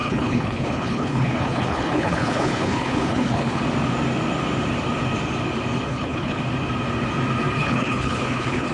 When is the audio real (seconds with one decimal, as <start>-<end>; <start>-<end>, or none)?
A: 3.6-5.9; 6.4-7.6